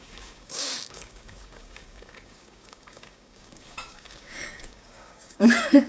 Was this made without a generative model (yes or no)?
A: no